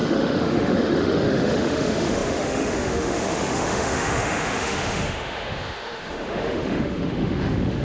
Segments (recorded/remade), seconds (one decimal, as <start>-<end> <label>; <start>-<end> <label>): 0.0-7.8 remade